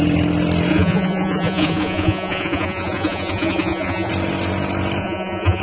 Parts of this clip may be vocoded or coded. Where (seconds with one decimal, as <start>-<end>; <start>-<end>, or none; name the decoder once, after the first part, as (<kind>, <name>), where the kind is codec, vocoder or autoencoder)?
0.7-4.1 (vocoder, Vocos); 5.0-5.6